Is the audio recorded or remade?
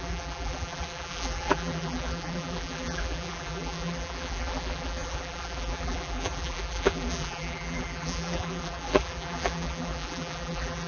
remade